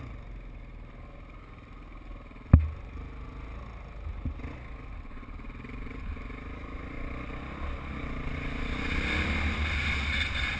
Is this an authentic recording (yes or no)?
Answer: yes